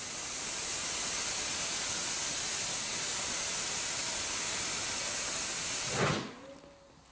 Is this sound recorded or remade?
recorded